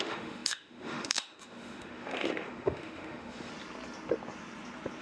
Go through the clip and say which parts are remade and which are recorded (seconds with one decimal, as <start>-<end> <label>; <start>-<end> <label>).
0.0-3.5 remade; 3.5-5.0 recorded